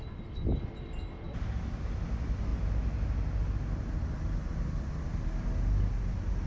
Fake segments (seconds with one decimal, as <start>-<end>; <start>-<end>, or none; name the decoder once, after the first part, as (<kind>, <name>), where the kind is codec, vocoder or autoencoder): none